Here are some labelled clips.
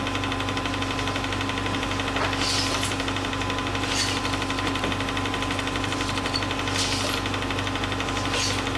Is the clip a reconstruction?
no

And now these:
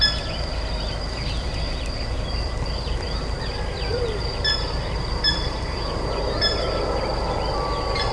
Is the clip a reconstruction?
no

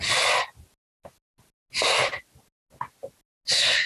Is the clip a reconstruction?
no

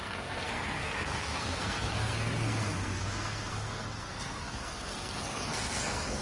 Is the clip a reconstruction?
yes